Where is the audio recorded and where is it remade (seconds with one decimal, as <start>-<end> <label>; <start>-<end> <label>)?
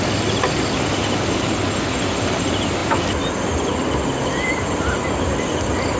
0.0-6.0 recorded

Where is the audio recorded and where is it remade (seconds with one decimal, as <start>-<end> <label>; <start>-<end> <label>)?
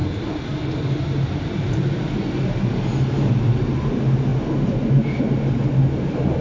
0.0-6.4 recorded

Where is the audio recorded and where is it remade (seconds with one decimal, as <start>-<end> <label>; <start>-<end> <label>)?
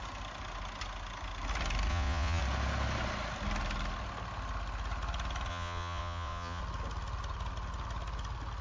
0.0-1.9 recorded; 1.9-2.4 remade; 2.4-5.5 recorded; 5.5-6.6 remade; 6.6-8.6 recorded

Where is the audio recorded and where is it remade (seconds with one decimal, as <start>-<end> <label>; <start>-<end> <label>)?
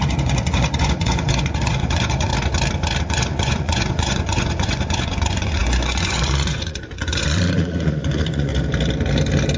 0.0-2.3 remade; 2.3-3.0 recorded; 3.0-8.5 remade; 8.5-9.6 recorded